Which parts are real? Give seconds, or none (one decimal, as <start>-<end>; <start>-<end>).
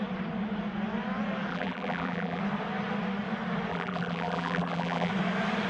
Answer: 0.0-1.5; 2.4-3.7; 5.1-5.7